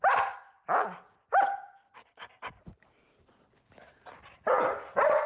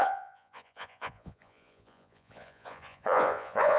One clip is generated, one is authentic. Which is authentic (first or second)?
first